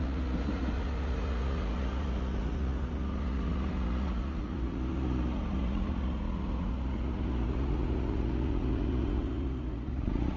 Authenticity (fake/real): fake